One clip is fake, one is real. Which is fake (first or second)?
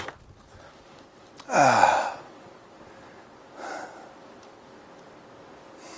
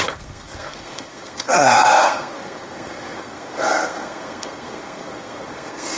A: second